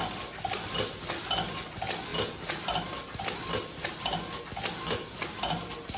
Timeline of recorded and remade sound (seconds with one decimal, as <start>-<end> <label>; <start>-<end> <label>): 0.0-6.0 recorded